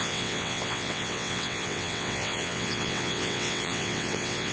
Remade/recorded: remade